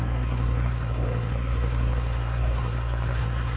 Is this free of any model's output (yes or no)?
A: no